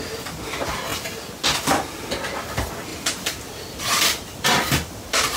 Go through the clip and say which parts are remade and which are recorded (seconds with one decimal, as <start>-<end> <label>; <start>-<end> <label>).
0.0-2.9 recorded; 2.9-5.4 remade